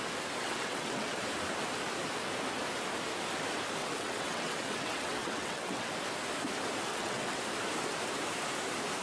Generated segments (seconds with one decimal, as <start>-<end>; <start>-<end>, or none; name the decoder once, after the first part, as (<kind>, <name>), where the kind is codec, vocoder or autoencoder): 0.4-1.2 (vocoder, WaveNeXt); 3.8-5.9; 6.9-7.4